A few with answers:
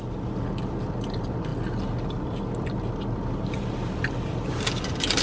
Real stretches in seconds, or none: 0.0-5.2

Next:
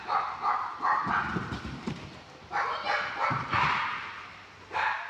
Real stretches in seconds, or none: 0.0-5.1

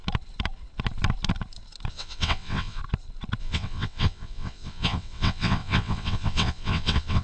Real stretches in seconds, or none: 0.0-1.9; 2.8-3.4